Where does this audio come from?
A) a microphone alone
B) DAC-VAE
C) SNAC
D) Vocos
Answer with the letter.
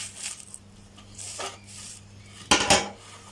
A